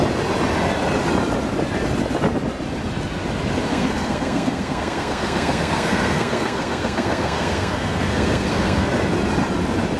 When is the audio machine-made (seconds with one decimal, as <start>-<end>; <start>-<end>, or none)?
3.7-8.9

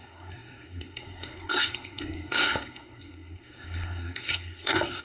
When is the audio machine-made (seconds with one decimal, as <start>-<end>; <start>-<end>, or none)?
0.0-5.0

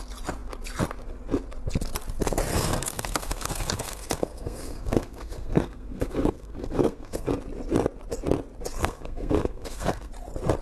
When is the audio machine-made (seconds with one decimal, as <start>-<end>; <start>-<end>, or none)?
2.5-7.3; 8.8-10.1

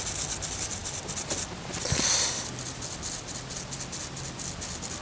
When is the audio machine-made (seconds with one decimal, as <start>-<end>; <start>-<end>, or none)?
none

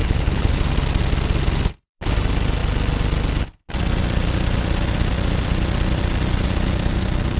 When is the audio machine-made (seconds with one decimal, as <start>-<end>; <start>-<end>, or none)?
0.0-0.6